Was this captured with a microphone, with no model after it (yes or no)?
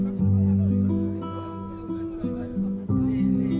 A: yes